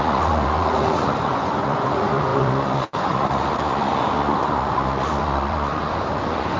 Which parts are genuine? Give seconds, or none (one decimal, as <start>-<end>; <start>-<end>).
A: none